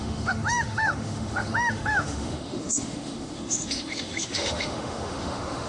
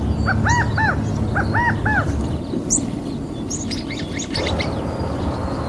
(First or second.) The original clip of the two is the second